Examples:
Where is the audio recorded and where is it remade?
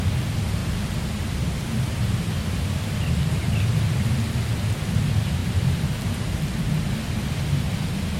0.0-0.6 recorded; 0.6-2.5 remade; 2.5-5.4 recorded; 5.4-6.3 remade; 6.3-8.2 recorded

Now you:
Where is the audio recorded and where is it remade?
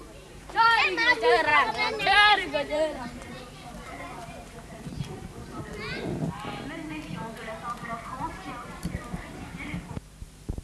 0.0-5.4 remade; 5.4-7.3 recorded; 7.3-10.6 remade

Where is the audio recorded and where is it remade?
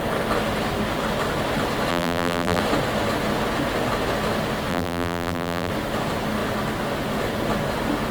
0.0-1.9 recorded; 1.9-2.6 remade; 2.6-4.7 recorded; 4.7-5.7 remade; 5.7-8.1 recorded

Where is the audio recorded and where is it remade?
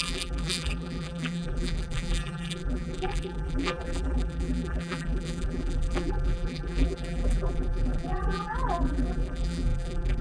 0.0-10.2 remade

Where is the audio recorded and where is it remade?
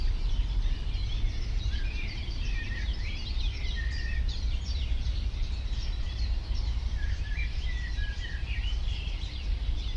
0.0-1.0 remade; 1.0-1.5 recorded; 1.5-2.9 remade; 2.9-4.6 recorded; 4.6-10.0 remade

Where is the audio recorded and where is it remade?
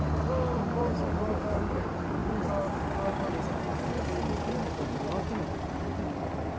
0.0-0.5 recorded; 0.5-1.8 remade; 1.8-2.2 recorded; 2.2-2.7 remade; 2.7-6.6 recorded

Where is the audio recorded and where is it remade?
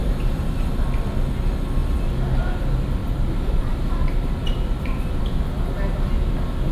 0.0-0.9 remade; 0.9-3.0 recorded; 3.0-3.6 remade; 3.6-4.0 recorded; 4.0-5.2 remade; 5.2-6.7 recorded